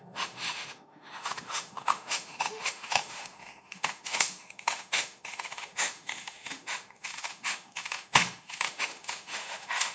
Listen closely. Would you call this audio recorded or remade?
remade